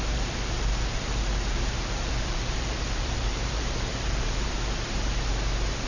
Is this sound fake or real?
fake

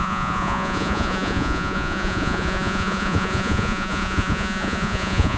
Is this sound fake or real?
fake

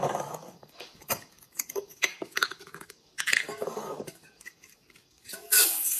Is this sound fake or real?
fake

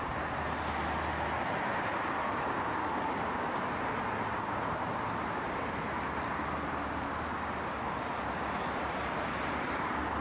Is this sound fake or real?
real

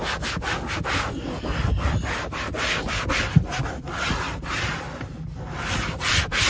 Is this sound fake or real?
real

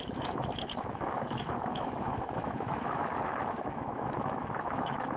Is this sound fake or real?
fake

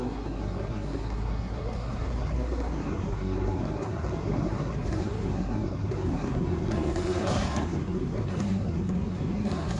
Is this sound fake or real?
fake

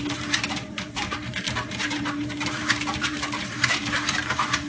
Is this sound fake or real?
fake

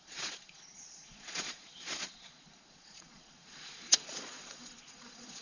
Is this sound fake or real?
fake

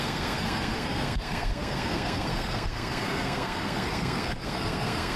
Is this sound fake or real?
fake